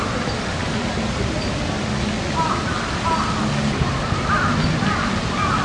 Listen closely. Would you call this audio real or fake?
real